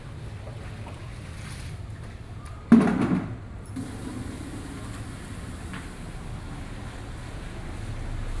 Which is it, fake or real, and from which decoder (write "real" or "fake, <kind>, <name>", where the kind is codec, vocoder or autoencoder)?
real